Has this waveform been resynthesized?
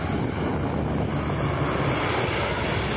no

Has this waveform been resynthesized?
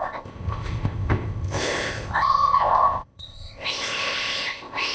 yes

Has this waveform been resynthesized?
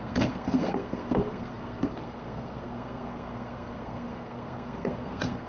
yes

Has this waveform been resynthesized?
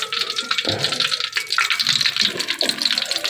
no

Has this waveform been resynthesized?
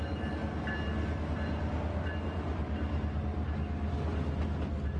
no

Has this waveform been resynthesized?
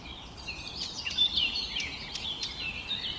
no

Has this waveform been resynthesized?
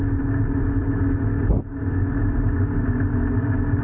no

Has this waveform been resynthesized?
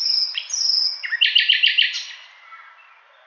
no